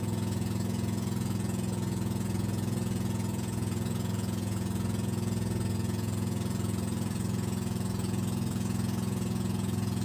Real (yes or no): no